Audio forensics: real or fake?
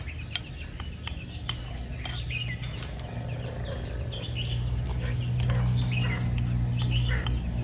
real